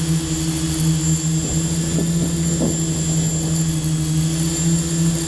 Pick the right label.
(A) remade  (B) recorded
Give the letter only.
B